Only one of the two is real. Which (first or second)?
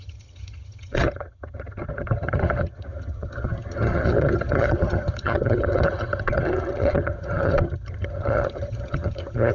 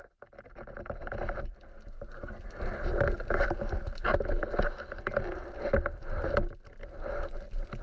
second